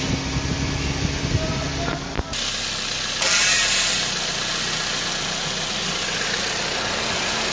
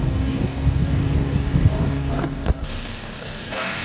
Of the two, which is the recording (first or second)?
first